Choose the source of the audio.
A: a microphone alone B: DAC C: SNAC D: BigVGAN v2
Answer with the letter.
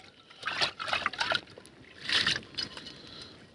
A